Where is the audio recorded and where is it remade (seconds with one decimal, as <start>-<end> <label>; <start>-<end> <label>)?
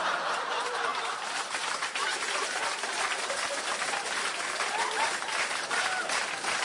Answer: 0.0-6.6 recorded